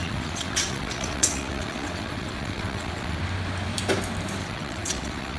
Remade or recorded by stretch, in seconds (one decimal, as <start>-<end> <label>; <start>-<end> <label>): 0.0-3.2 remade; 3.2-4.4 recorded; 4.4-5.4 remade